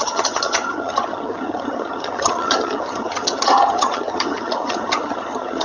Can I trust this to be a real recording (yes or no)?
no